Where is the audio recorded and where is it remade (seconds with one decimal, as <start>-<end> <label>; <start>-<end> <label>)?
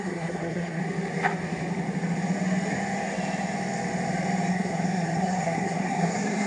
0.0-0.8 remade; 0.8-4.5 recorded; 4.5-6.5 remade